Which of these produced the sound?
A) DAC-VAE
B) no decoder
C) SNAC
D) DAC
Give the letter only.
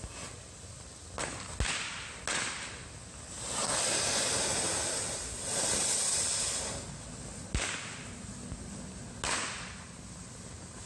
B